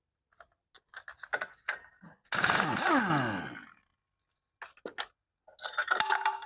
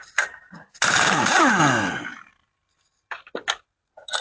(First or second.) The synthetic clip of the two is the second